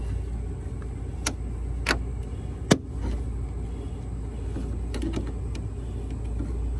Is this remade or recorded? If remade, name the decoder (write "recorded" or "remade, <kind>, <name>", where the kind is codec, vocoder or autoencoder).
recorded